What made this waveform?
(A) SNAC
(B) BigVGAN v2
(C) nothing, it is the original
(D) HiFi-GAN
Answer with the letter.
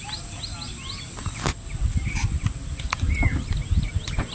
C